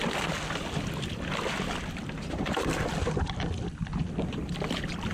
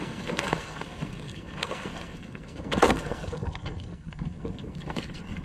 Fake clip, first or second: second